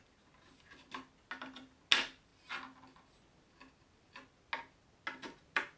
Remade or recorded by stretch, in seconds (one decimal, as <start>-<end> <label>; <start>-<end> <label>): 0.0-5.8 recorded